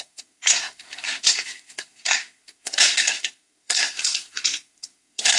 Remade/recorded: remade